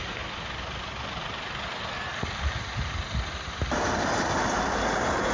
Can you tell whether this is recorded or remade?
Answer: recorded